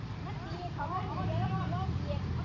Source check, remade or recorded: remade